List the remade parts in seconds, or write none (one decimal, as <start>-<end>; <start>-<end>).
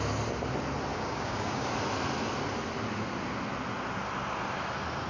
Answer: 0.9-1.7